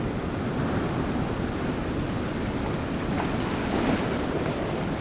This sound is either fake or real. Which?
real